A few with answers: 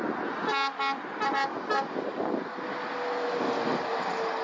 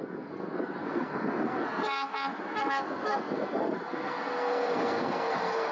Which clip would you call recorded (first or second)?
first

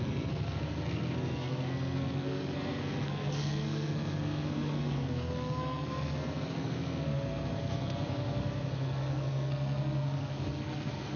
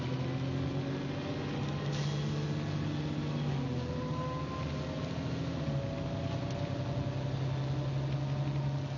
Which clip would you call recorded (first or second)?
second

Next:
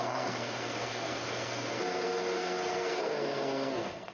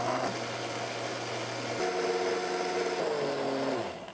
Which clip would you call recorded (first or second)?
second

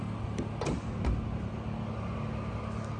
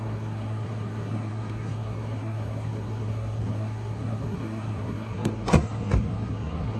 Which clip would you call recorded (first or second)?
first